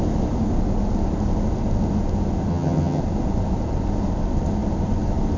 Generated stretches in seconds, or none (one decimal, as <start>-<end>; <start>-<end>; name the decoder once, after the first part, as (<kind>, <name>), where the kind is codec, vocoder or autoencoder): 2.5-3.0 (vocoder, HiFi-GAN)